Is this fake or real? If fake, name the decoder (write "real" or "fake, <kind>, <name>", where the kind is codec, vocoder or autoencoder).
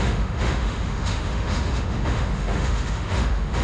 fake, autoencoder, DAC-VAE